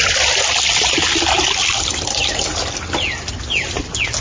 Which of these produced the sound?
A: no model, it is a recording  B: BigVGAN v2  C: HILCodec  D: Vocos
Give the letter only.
A